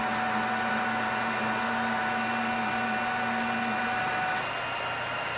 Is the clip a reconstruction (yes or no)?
no